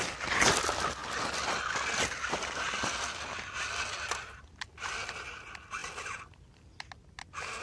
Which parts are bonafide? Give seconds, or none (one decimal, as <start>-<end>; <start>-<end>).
0.0-7.6